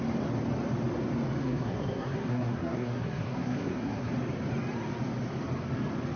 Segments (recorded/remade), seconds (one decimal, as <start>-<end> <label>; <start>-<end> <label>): 0.0-1.4 recorded; 1.4-4.1 remade; 4.1-6.2 recorded